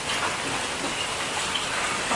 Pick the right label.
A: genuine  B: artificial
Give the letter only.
A